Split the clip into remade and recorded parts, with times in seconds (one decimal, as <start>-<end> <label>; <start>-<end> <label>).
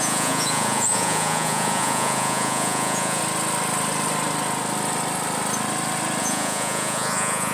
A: 0.0-3.2 remade; 3.2-6.2 recorded; 6.2-7.5 remade